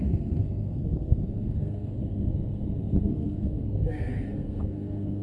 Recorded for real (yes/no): no